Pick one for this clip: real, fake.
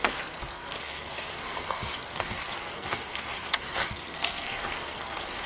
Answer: fake